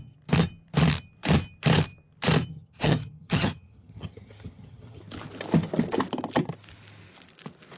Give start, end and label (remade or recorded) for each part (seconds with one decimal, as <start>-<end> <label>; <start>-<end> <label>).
0.0-2.5 recorded; 2.5-5.0 remade; 5.0-7.8 recorded